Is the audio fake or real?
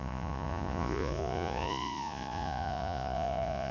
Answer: fake